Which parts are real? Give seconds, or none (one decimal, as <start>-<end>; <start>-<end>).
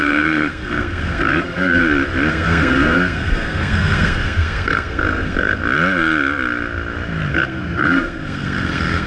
1.8-2.3; 5.6-7.3